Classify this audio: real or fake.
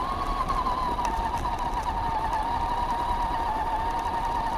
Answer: real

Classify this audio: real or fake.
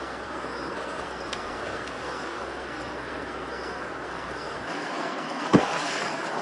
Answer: fake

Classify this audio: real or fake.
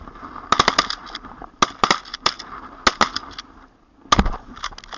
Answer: real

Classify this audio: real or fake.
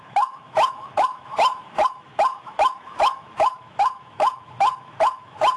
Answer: fake